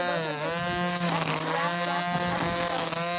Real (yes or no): yes